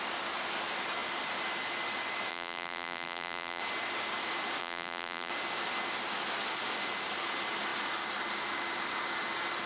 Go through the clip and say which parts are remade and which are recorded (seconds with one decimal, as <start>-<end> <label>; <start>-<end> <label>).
0.0-2.3 recorded; 2.3-3.6 remade; 3.6-4.6 recorded; 4.6-5.3 remade; 5.3-9.7 recorded